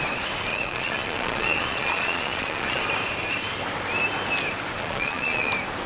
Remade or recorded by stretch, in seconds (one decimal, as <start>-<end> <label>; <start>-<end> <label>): 0.0-0.5 recorded; 0.5-2.8 remade; 2.8-4.8 recorded; 4.8-5.5 remade; 5.5-5.9 recorded